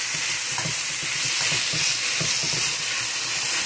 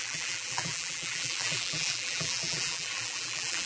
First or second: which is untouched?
first